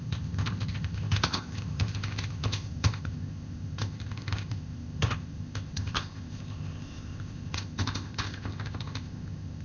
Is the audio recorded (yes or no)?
no